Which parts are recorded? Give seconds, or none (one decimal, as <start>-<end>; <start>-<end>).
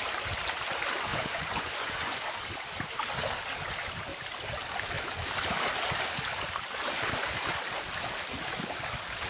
0.0-1.1; 2.2-9.3